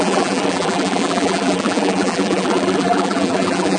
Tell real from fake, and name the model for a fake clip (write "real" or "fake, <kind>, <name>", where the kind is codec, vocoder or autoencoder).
fake, vocoder, BigVGAN v2